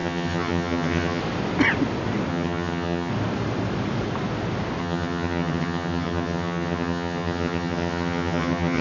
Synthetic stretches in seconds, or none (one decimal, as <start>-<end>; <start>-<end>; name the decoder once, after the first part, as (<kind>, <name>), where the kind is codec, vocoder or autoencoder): 0.0-1.2 (vocoder, HiFi-GAN); 2.3-3.1; 4.8-8.8